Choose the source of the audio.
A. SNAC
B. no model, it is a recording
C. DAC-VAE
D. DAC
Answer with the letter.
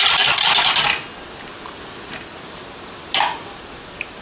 B